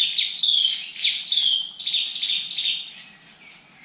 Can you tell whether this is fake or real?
real